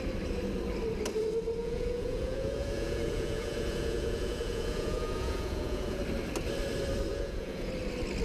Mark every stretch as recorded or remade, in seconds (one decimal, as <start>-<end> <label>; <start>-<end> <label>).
0.0-1.6 recorded; 1.6-6.0 remade; 6.0-7.1 recorded; 7.1-7.7 remade; 7.7-8.2 recorded